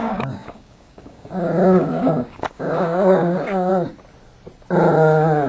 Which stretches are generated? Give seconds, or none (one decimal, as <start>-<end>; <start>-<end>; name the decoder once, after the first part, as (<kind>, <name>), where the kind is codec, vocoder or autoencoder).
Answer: 0.0-3.7 (codec, DAC)

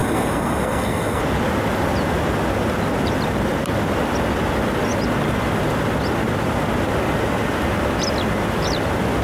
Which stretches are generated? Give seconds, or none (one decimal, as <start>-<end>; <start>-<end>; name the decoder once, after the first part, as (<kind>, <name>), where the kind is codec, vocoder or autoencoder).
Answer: 0.0-1.2 (codec, SNAC)

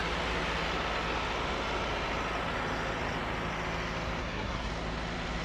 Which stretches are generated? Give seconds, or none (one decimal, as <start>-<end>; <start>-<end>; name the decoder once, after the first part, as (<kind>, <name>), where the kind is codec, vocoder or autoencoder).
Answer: 4.2-4.7 (codec, SNAC)

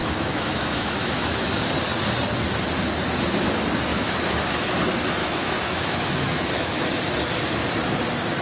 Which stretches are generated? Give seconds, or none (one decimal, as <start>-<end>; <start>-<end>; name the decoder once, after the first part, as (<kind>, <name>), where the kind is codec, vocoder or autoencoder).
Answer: 0.0-1.5 (autoencoder, DAC-VAE); 3.9-4.7; 5.2-6.9

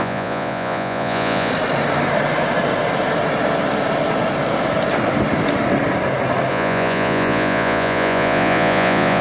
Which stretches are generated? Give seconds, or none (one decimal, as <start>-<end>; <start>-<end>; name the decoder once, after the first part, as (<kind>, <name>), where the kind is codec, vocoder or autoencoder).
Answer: 0.0-1.5 (vocoder, Vocos); 6.5-9.2